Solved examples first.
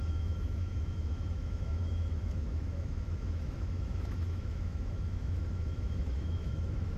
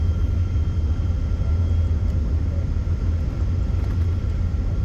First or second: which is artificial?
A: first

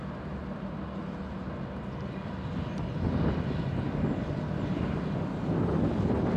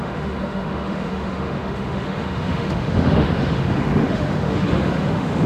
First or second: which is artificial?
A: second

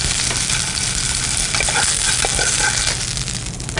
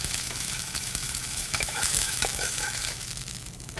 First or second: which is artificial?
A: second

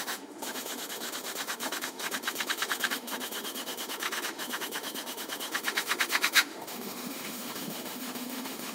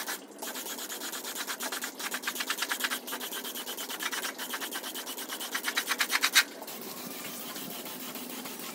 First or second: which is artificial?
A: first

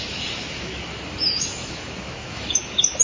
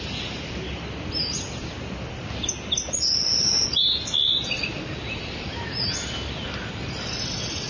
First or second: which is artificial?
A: first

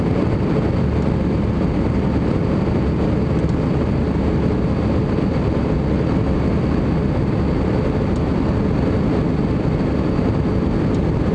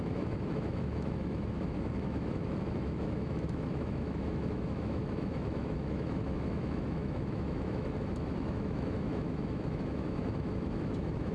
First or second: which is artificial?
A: second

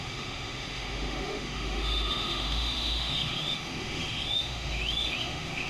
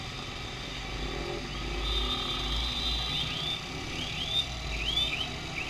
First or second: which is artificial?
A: first